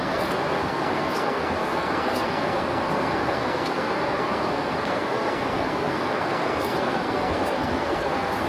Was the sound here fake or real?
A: fake